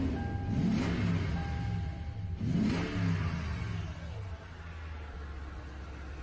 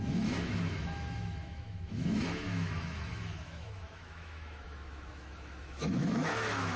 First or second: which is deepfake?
second